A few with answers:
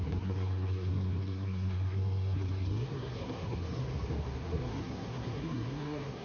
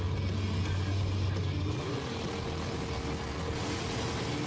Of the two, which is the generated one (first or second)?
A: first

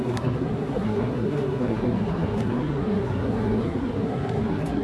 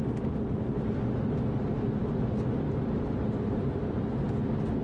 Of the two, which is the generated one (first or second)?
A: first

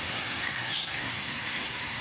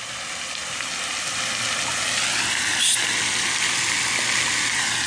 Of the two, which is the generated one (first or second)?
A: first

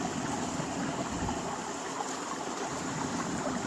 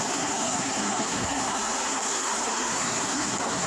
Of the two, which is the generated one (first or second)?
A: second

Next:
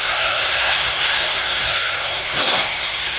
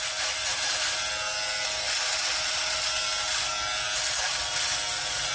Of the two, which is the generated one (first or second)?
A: first